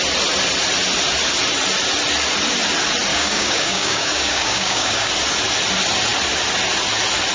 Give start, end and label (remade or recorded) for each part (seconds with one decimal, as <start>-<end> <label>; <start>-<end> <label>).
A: 0.0-3.1 recorded; 3.1-5.1 remade; 5.1-7.3 recorded